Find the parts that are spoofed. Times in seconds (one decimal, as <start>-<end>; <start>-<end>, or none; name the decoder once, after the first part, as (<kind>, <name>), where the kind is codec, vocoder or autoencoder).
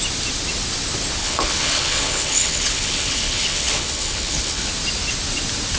1.2-4.7 (codec, HILCodec)